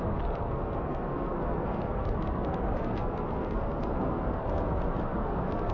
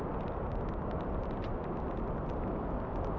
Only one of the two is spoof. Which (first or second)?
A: first